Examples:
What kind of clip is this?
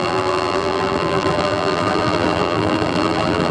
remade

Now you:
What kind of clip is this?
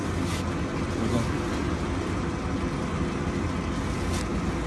recorded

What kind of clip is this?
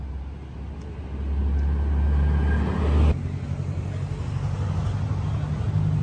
recorded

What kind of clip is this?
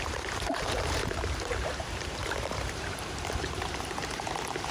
remade